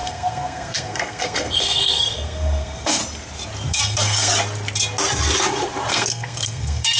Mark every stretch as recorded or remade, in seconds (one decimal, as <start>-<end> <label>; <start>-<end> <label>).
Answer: 0.0-3.0 remade; 3.0-3.7 recorded; 3.7-4.3 remade; 4.3-5.9 recorded; 5.9-7.0 remade